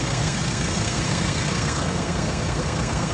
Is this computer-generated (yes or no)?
yes